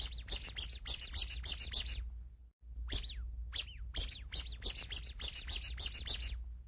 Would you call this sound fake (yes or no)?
no